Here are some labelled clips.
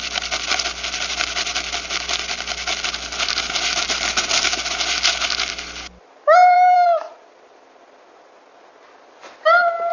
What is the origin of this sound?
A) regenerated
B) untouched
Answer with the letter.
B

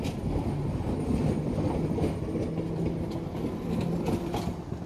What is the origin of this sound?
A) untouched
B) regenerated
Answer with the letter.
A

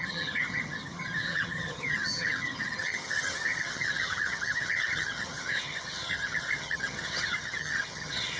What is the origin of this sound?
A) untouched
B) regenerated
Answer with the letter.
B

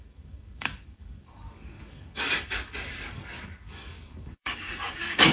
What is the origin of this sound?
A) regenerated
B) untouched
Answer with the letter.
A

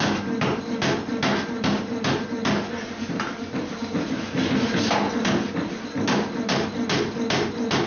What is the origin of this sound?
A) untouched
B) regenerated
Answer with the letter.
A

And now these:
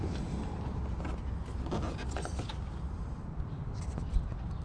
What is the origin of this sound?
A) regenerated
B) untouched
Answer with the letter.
B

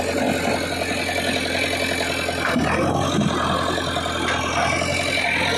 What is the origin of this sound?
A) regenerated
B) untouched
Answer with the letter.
B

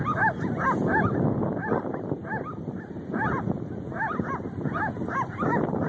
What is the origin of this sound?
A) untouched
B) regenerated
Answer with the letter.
A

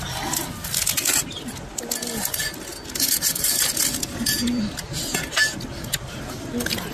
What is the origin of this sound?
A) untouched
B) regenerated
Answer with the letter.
A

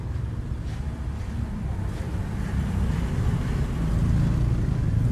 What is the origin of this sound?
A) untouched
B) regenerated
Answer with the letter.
A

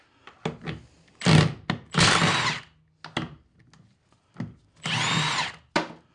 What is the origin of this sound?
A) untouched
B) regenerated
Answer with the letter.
A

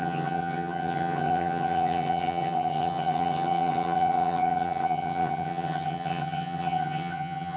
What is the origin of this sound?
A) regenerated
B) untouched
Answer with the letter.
A